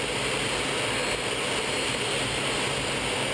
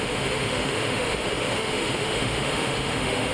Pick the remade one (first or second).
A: second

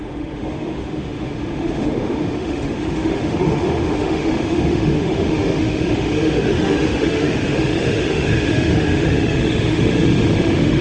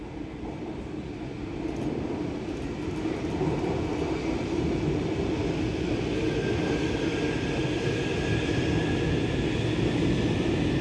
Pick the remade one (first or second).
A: first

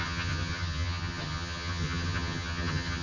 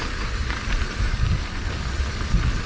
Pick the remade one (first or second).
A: first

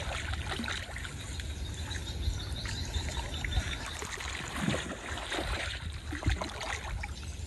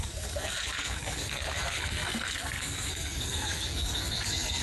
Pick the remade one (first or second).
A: second